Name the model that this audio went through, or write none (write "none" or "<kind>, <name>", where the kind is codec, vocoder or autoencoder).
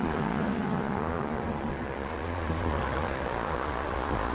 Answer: vocoder, Vocos